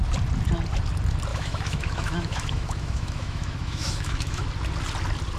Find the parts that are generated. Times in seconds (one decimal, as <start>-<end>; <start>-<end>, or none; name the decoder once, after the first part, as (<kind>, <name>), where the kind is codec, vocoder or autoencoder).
1.3-4.5 (autoencoder, DAC-VAE)